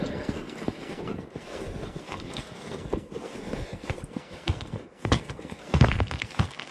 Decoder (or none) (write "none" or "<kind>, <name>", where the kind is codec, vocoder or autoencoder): codec, SNAC